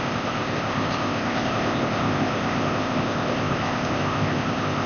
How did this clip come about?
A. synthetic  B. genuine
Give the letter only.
A